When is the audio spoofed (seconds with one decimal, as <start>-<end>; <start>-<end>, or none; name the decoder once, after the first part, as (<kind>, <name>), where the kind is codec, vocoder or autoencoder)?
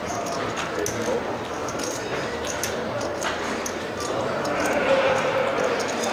1.6-5.3 (vocoder, BigVGAN v2)